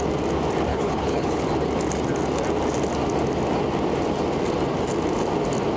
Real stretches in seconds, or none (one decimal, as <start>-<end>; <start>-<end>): 0.0-0.7; 1.4-5.8